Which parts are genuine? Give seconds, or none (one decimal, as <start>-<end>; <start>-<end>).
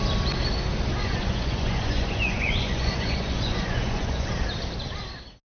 0.0-1.0; 4.3-5.5